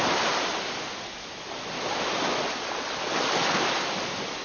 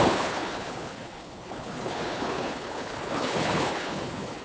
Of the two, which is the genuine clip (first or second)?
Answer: first